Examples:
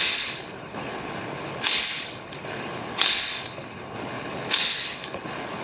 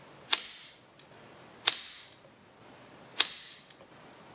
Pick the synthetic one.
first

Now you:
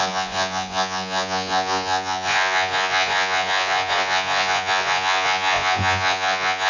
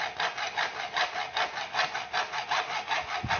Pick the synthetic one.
first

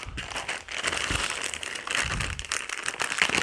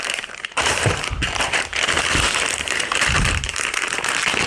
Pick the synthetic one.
second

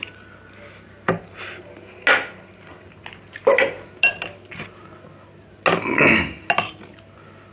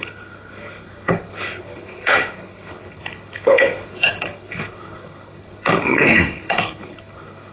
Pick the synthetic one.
second